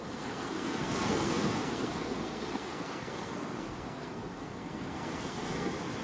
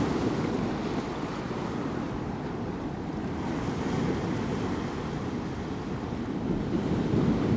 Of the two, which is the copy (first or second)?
first